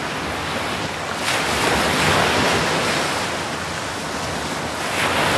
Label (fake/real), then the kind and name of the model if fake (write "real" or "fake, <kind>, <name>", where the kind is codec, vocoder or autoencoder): real